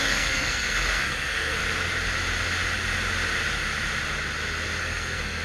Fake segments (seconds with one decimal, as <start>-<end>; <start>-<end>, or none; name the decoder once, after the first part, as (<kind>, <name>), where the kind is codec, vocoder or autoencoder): 0.0-1.6 (codec, SNAC); 4.8-5.4